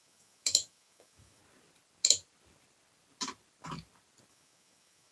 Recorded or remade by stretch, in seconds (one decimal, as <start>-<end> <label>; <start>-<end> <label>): 0.0-1.4 remade; 1.4-4.3 recorded; 4.3-5.1 remade